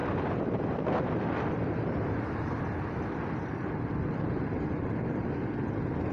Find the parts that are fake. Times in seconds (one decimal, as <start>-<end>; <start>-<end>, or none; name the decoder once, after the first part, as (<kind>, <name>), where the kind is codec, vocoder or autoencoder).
0.0-0.6 (vocoder, BigVGAN v2)